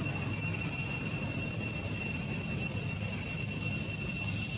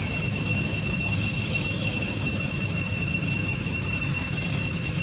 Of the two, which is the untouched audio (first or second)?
first